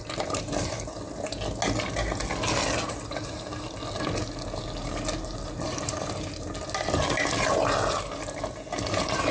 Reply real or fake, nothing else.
real